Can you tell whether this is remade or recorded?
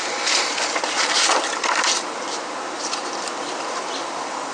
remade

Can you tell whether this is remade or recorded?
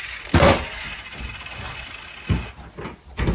recorded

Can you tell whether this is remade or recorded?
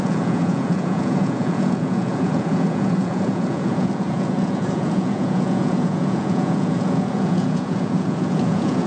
remade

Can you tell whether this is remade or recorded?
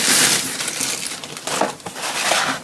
recorded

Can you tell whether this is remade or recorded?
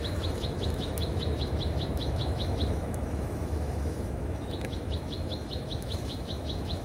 remade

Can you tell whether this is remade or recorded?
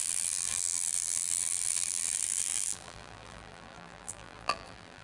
remade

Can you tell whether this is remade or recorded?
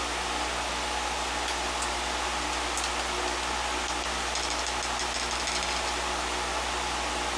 recorded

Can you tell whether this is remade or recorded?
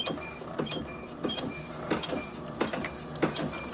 recorded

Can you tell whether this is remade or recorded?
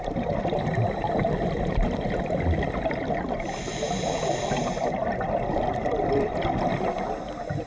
recorded